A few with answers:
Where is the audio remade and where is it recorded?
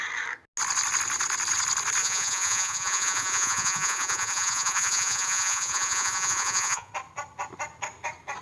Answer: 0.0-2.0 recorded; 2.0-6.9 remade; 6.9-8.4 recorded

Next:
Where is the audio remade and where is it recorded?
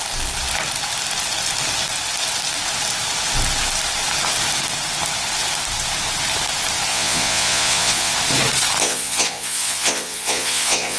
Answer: 0.0-6.9 recorded; 6.9-8.1 remade; 8.1-8.8 recorded; 8.8-11.0 remade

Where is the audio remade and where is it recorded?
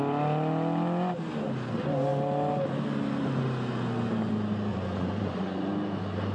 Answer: 0.0-4.7 recorded; 4.7-5.7 remade; 5.7-6.3 recorded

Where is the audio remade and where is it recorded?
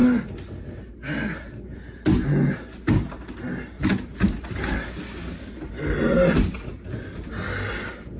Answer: 0.0-8.2 recorded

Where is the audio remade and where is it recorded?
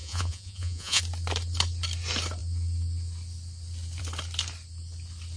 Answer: 0.0-1.0 remade; 1.0-5.4 recorded